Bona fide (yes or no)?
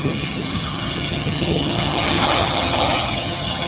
no